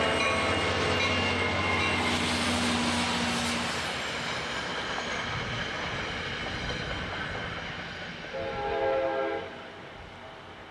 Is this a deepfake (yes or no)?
no